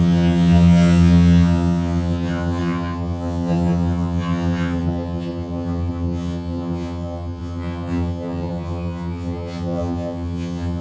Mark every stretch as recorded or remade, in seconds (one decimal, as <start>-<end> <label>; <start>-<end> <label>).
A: 0.0-10.8 remade